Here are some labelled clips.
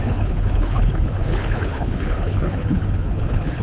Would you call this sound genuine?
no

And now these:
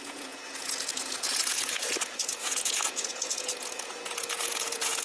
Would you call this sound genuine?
no